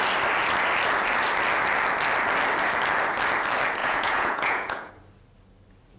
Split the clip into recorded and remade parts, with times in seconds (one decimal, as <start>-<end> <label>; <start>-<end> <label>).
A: 0.0-3.8 recorded; 3.8-4.9 remade; 4.9-6.0 recorded